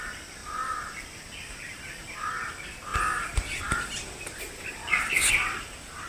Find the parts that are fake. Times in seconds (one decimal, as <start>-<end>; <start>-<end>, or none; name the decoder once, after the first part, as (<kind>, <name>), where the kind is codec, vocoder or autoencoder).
none